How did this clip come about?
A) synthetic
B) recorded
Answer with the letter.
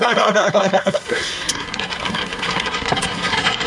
A